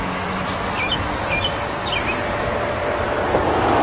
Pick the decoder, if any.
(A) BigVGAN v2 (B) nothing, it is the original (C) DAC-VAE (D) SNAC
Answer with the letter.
B